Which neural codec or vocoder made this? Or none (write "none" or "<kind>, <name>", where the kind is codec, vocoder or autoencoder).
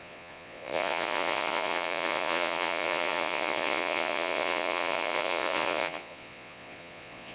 vocoder, Vocos